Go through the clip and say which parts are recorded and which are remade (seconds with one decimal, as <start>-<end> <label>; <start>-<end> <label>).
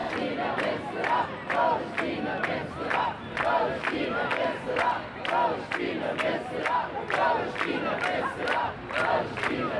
0.0-2.6 recorded; 2.6-7.7 remade; 7.7-9.8 recorded